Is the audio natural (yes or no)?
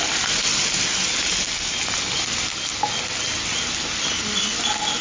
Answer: yes